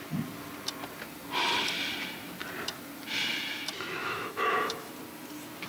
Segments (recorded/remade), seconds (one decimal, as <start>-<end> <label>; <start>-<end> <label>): 0.0-4.0 recorded; 4.0-4.9 remade; 4.9-5.7 recorded